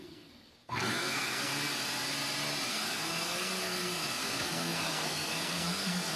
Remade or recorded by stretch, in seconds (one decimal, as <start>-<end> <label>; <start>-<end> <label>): 0.0-1.5 remade; 1.5-2.7 recorded; 2.7-6.2 remade